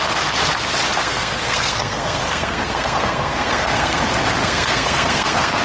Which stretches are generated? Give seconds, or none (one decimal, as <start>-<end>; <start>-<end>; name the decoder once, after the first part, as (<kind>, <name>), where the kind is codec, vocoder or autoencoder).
1.0-4.0 (codec, SNAC); 4.4-5.6